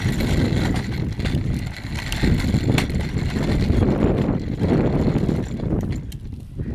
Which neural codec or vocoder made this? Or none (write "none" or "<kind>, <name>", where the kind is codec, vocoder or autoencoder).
none